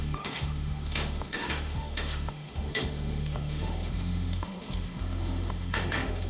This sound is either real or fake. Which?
fake